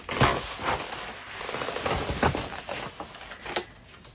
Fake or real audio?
real